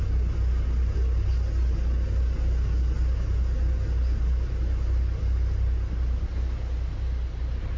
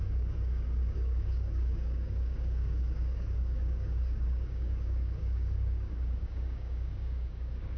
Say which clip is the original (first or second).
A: first